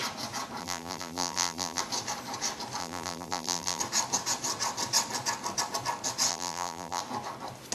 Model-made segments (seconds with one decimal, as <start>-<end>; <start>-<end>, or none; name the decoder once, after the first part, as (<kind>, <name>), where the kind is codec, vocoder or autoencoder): 0.6-1.8 (vocoder, BigVGAN v2); 2.8-3.8; 6.3-7.0